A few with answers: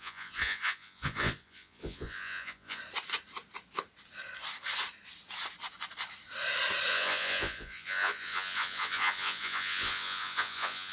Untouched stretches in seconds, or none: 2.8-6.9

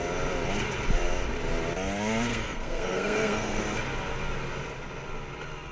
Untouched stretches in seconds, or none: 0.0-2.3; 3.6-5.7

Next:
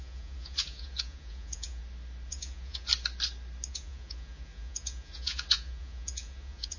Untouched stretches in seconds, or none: 1.8-2.3; 2.9-3.7

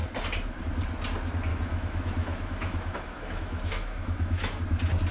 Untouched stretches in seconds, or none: 0.0-1.5; 4.6-5.1

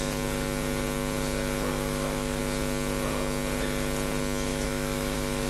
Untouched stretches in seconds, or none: 0.0-1.7; 2.4-4.5

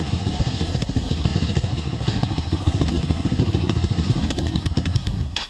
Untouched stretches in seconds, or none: none

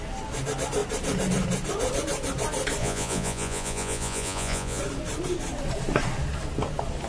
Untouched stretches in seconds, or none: 0.0-2.8; 4.8-7.1

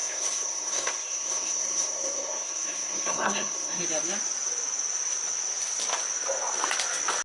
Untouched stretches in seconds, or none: 3.8-7.2